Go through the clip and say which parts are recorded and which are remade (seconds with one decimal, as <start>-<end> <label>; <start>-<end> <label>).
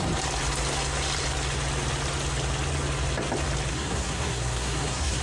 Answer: 0.0-3.7 recorded; 3.7-5.2 remade